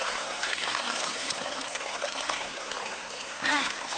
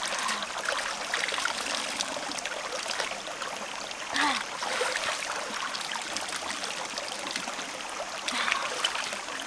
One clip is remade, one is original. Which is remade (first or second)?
first